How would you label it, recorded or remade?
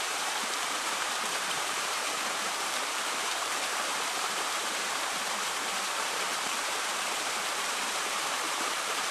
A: remade